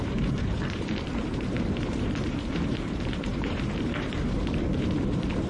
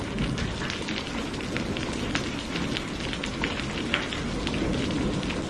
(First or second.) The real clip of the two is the second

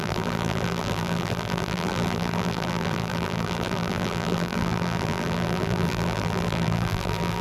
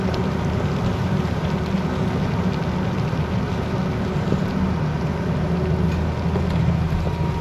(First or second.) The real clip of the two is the second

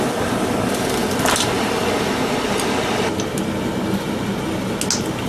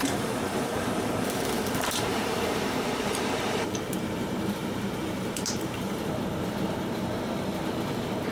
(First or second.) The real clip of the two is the first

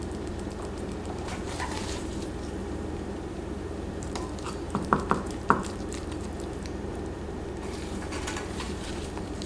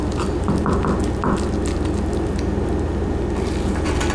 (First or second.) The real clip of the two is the second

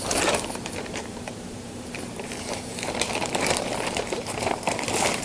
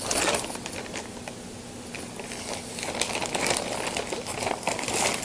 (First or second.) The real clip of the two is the second